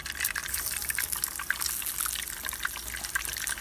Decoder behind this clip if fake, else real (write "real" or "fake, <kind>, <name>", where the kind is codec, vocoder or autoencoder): real